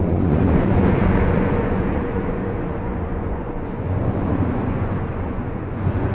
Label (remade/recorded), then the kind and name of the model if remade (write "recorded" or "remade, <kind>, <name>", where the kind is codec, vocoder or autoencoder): remade, vocoder, Vocos